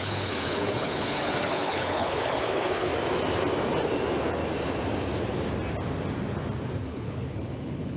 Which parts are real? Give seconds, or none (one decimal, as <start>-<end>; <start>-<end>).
2.9-6.8